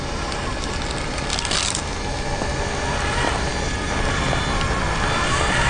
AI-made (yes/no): no